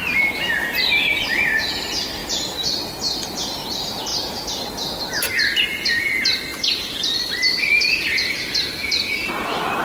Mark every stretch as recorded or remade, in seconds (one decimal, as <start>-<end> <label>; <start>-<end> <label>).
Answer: 0.0-6.5 recorded; 6.5-9.3 remade; 9.3-9.8 recorded